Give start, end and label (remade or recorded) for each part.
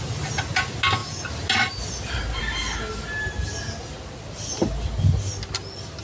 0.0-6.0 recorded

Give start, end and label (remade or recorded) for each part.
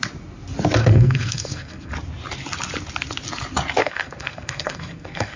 0.0-0.8 recorded; 0.8-1.9 remade; 1.9-3.8 recorded; 3.8-5.4 remade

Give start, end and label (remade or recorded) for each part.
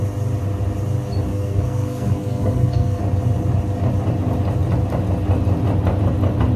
0.0-1.3 recorded; 1.3-3.0 remade; 3.0-6.6 recorded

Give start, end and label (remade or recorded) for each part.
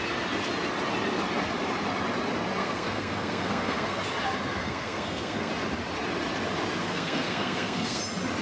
0.0-2.6 recorded; 2.6-4.0 remade; 4.0-4.6 recorded; 4.6-5.5 remade; 5.5-6.8 recorded; 6.8-8.0 remade; 8.0-8.4 recorded